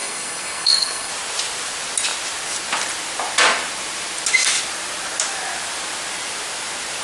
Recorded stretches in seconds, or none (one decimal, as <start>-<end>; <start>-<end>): 1.1-7.0